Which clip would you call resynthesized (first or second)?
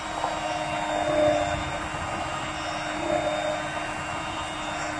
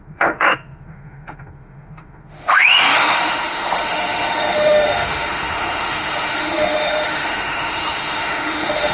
second